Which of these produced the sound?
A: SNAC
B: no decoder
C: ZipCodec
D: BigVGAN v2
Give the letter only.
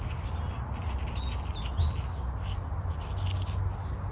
B